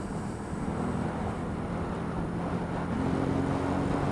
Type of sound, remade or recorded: recorded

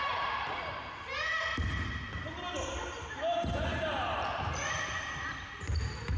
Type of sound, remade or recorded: remade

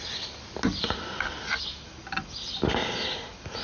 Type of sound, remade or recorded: recorded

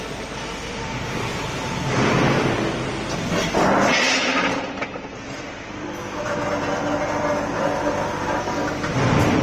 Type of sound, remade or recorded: recorded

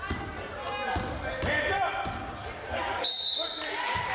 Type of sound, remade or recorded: recorded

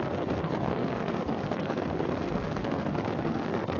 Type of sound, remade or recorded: remade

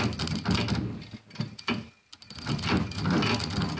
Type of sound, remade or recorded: recorded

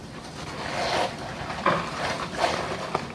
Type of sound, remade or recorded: recorded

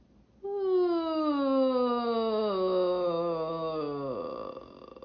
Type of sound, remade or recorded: recorded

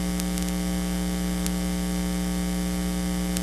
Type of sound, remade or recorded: recorded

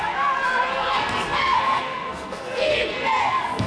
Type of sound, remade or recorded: remade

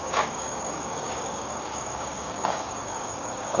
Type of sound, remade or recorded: remade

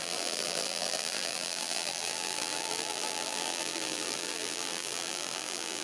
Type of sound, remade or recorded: remade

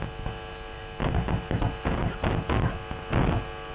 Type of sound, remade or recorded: recorded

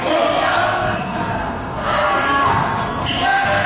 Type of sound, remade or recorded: remade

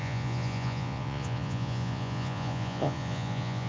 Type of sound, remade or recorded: remade